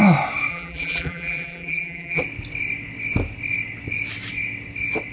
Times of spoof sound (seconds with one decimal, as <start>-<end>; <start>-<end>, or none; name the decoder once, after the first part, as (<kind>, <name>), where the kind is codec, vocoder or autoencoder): 0.5-2.2 (vocoder, BigVGAN v2)